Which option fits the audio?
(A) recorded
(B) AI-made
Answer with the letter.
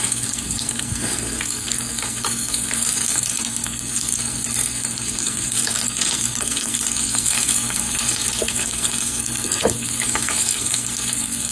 B